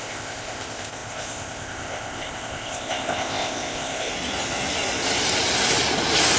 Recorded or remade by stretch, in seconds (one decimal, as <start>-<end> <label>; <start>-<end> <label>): 0.0-4.1 remade; 4.1-6.4 recorded